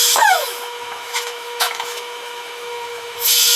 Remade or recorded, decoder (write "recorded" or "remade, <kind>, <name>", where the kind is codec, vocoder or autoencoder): remade, autoencoder, DAC-VAE